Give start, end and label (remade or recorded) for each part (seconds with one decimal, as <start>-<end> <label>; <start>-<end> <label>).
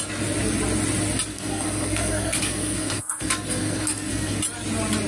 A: 0.0-1.3 recorded; 1.3-4.4 remade; 4.4-5.1 recorded